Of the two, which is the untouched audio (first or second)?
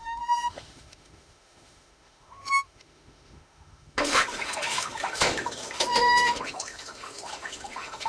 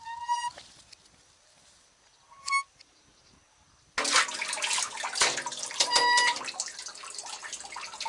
second